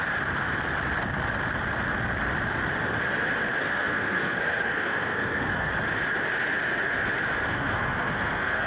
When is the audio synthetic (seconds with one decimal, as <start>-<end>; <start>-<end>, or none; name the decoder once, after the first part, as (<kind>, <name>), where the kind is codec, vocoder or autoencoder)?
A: 3.6-5.7 (codec, SNAC); 7.5-8.7